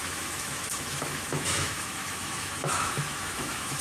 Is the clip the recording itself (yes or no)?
no